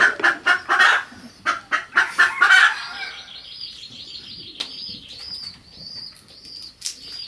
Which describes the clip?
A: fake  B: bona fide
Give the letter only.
B